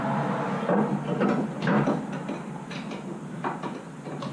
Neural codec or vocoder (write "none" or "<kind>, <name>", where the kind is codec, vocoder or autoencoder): none